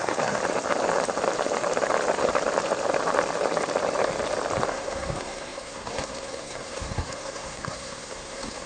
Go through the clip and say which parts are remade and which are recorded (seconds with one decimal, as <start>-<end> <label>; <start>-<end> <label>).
0.0-0.4 remade; 0.4-4.7 recorded; 4.7-8.7 remade